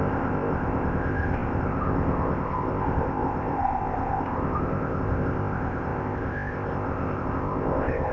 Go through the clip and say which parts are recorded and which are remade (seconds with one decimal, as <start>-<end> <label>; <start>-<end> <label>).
0.0-8.1 remade